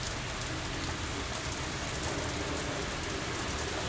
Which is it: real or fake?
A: real